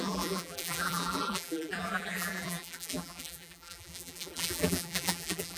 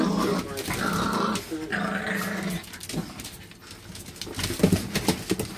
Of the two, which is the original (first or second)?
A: second